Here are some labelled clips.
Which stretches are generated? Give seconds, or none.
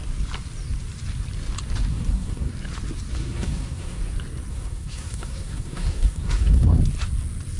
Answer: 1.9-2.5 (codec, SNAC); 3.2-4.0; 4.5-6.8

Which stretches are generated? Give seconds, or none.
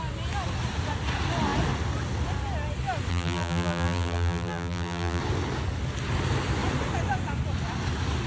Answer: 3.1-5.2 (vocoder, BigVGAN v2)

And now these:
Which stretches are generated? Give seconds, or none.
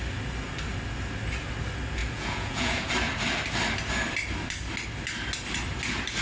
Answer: 2.0-2.9 (vocoder, Vocos)